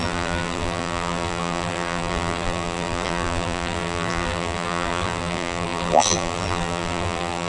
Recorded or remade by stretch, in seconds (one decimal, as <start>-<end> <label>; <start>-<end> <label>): 0.0-7.5 remade